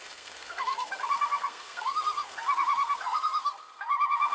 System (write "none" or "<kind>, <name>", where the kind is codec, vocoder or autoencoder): codec, SNAC